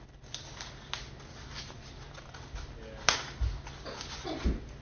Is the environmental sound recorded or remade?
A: recorded